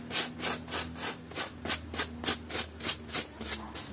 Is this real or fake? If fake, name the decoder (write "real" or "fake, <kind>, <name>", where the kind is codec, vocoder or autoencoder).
real